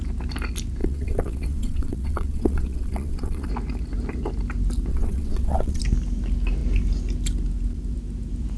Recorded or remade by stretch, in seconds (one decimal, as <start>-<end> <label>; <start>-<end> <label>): 0.0-0.8 recorded; 0.8-3.5 remade; 3.5-4.9 recorded; 4.9-5.8 remade; 5.8-8.6 recorded